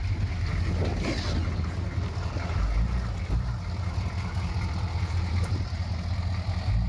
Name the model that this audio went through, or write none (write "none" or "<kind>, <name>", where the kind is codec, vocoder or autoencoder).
none